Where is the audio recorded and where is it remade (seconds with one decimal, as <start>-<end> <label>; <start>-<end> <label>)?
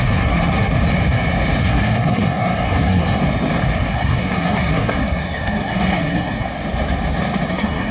0.0-0.7 remade; 0.7-1.6 recorded; 1.6-3.2 remade; 3.2-3.9 recorded; 3.9-6.5 remade; 6.5-7.5 recorded; 7.5-7.9 remade